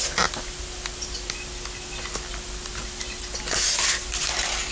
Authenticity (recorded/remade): recorded